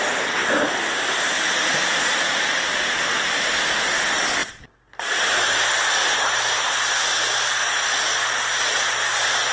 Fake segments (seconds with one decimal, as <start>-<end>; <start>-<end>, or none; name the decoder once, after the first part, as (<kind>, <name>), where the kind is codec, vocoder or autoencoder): none